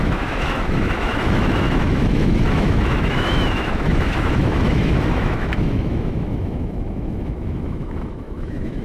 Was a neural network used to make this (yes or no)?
yes